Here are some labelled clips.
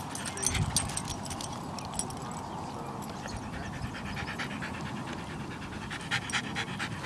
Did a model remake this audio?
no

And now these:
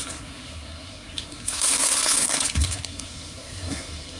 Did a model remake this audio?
yes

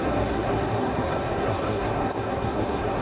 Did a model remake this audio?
yes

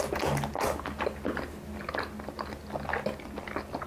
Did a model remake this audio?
no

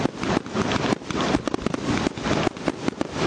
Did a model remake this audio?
no